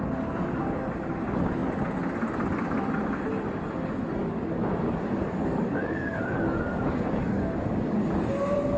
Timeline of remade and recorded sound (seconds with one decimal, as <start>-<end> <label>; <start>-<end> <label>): 0.0-4.2 recorded; 4.2-8.1 remade; 8.1-8.8 recorded